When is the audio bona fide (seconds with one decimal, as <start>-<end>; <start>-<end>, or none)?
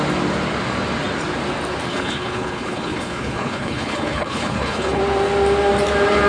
0.0-1.9; 5.0-6.3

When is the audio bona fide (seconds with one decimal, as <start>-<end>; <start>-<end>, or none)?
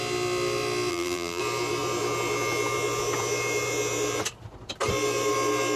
0.0-0.9; 1.4-5.8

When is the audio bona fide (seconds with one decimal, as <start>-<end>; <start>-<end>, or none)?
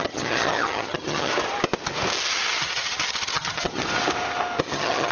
1.3-2.3; 3.8-4.6